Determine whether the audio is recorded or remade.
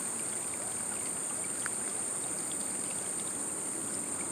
recorded